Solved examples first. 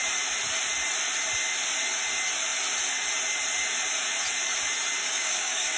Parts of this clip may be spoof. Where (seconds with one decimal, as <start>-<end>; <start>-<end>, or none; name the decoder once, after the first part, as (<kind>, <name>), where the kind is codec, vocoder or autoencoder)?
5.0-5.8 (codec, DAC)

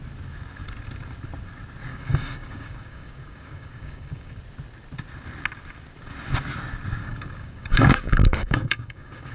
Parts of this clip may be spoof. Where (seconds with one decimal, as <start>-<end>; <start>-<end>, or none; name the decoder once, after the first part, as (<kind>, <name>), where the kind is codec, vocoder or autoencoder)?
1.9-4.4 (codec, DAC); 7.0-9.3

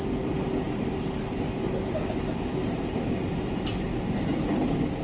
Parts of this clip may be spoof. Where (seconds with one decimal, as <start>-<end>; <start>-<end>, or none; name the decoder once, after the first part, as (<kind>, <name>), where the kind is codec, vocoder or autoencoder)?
none